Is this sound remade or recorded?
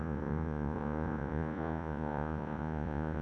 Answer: remade